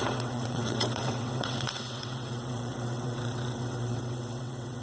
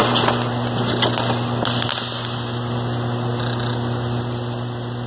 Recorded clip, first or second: second